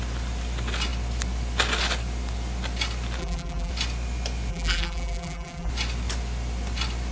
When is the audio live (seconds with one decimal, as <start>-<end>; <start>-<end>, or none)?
0.0-3.2; 3.7-4.5; 5.7-7.1